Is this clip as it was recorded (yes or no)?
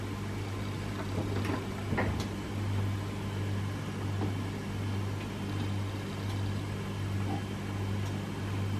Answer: yes